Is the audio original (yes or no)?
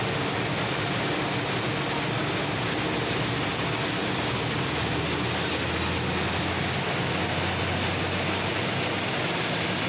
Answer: yes